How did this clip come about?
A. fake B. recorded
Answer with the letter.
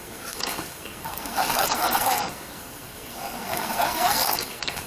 A